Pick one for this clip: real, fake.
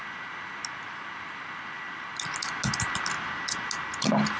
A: real